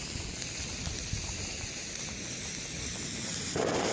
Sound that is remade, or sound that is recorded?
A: recorded